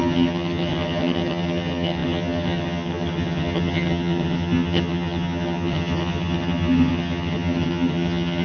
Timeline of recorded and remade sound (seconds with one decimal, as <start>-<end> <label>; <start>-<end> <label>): 0.0-8.4 remade